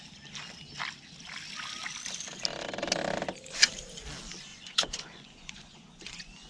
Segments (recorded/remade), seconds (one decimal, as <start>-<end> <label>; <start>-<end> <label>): 0.0-4.5 recorded; 4.5-6.5 remade